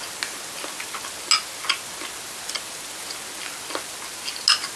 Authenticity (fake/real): real